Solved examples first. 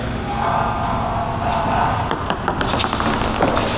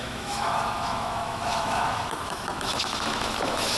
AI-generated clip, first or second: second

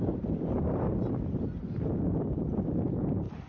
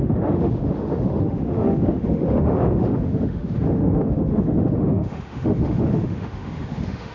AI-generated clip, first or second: second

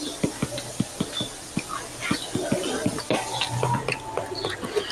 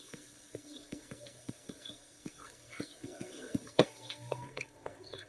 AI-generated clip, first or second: second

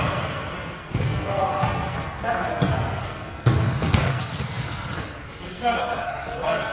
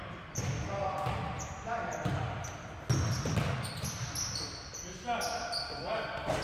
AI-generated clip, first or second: first